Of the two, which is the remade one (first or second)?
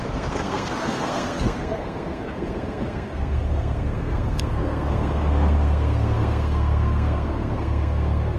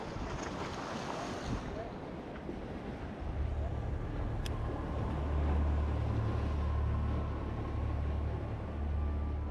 first